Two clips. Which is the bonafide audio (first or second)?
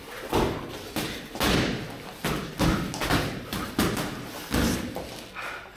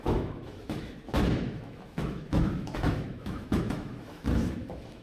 first